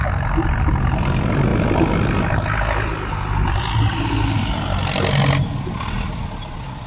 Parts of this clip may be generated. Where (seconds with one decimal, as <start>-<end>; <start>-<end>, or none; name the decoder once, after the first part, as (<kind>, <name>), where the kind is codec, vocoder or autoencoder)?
none